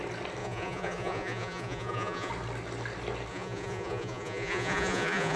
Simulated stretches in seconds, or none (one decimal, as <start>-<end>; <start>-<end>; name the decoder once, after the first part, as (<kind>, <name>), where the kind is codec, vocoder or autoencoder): 0.4-2.3 (vocoder, Vocos); 3.3-5.4